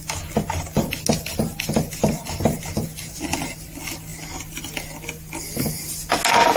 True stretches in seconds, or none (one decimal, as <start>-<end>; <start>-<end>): 0.0-4.1; 5.7-6.6